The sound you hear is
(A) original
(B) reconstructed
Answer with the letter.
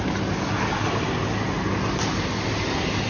A